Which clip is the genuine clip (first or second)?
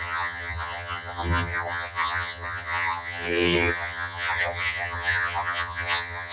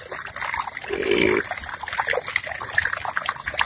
second